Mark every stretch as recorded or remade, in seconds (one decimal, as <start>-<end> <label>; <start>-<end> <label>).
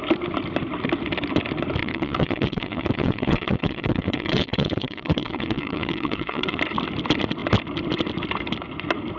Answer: 0.0-1.8 recorded; 1.8-6.6 remade; 6.6-9.2 recorded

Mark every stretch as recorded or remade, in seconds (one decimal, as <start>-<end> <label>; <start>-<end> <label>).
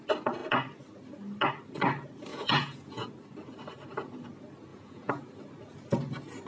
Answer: 0.0-2.3 recorded; 2.3-3.1 remade; 3.1-4.7 recorded; 4.7-5.3 remade; 5.3-6.5 recorded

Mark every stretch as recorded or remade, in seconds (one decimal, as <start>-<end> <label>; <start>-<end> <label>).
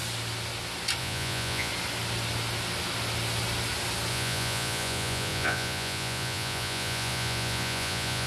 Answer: 0.0-1.0 recorded; 1.0-1.7 remade; 1.7-4.1 recorded; 4.1-8.3 remade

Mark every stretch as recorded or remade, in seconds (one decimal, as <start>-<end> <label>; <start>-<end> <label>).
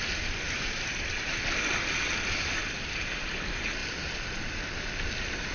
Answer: 0.0-5.5 recorded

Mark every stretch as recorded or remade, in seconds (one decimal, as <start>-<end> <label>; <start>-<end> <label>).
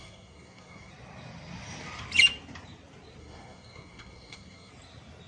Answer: 0.0-0.9 remade; 0.9-3.2 recorded; 3.2-4.7 remade; 4.7-5.3 recorded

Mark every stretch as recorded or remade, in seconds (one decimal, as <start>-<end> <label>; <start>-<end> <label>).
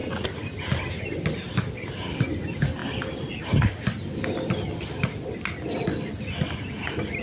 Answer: 0.0-7.2 recorded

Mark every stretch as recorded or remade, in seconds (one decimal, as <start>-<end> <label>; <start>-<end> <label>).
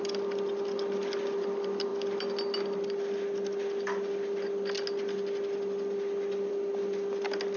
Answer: 0.0-7.6 recorded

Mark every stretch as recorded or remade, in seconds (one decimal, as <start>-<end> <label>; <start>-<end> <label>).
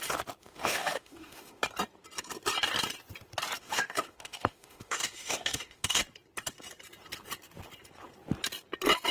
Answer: 0.0-0.4 recorded; 0.4-1.6 remade; 1.6-3.6 recorded; 3.6-6.0 remade; 6.0-9.1 recorded